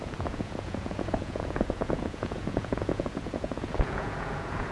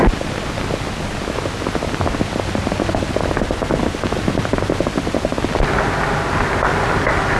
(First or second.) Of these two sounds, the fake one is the first